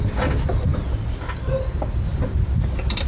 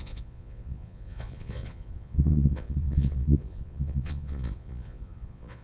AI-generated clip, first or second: second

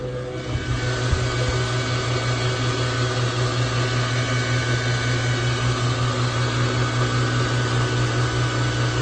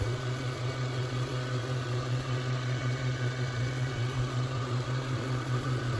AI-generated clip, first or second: second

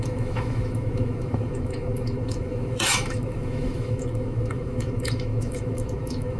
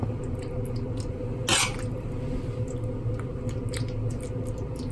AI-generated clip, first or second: first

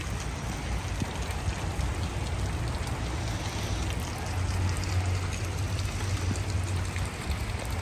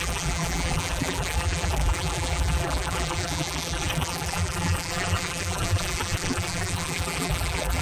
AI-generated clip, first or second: second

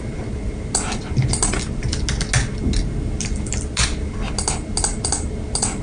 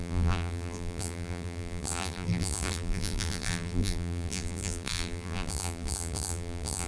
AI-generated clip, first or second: second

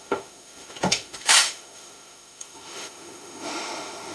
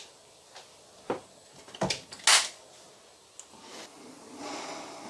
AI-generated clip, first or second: first